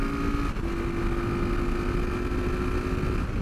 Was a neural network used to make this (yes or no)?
no